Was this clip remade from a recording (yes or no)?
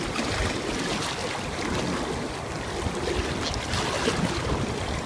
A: no